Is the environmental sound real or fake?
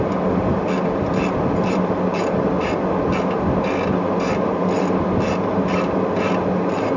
real